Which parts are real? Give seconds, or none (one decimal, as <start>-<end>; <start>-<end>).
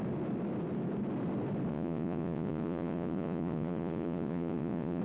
0.0-1.7